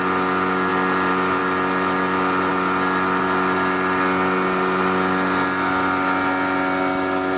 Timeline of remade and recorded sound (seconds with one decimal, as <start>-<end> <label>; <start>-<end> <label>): 0.0-7.4 recorded

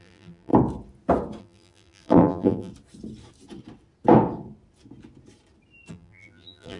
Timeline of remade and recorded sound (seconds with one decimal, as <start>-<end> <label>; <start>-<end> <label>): 0.0-0.5 remade; 0.5-1.4 recorded; 1.4-2.7 remade; 2.7-5.9 recorded; 5.9-6.8 remade

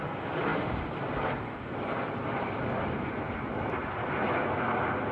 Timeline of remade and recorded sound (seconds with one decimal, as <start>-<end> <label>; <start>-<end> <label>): 0.0-5.1 recorded

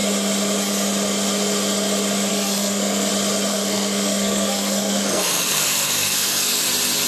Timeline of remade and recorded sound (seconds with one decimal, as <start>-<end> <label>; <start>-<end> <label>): 0.0-2.3 recorded; 2.3-3.1 remade; 3.1-3.5 recorded; 3.5-6.6 remade; 6.6-7.1 recorded

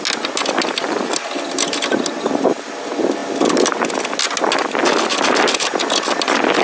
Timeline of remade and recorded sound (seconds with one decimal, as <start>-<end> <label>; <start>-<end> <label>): 0.0-6.6 recorded

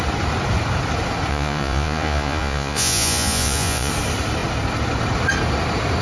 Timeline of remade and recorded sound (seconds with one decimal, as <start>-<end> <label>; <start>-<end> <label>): 0.0-1.3 recorded; 1.3-3.9 remade; 3.9-6.0 recorded